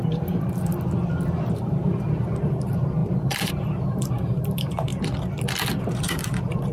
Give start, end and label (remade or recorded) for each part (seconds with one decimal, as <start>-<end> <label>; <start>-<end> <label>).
0.0-0.7 remade; 0.7-1.5 recorded; 1.5-4.9 remade; 4.9-5.8 recorded; 5.8-6.7 remade